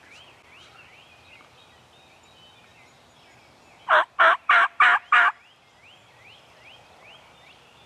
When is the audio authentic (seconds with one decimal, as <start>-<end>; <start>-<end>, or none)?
0.0-7.9